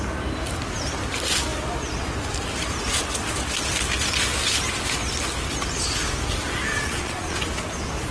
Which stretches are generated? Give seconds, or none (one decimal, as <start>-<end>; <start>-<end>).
6.7-7.4